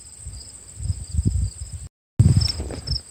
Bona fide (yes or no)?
yes